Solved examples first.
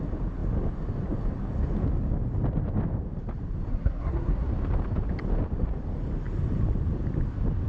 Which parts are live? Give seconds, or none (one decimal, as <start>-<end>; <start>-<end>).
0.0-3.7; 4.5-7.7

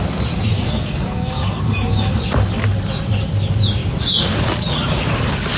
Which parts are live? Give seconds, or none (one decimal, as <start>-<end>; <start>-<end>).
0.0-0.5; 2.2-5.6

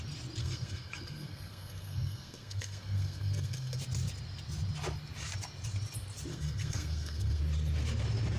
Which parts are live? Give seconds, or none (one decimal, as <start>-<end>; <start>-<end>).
0.0-0.4; 3.8-6.3; 7.4-8.4

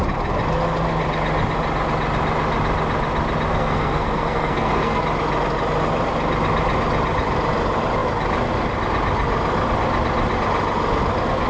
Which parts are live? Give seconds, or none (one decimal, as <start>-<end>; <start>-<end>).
0.0-3.5; 5.0-11.5